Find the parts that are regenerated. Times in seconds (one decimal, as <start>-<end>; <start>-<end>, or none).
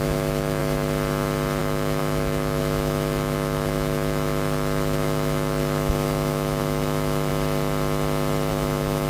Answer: 0.0-0.6; 1.6-7.3; 8.5-9.1